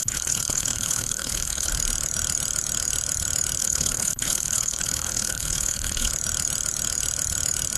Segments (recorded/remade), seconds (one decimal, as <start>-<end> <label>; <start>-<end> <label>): 0.0-1.7 remade; 1.7-3.6 recorded; 3.6-6.1 remade; 6.1-7.8 recorded